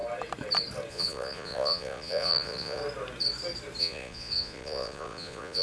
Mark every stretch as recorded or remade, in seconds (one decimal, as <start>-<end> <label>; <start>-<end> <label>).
0.0-0.9 recorded; 0.9-2.8 remade; 2.8-3.8 recorded; 3.8-5.6 remade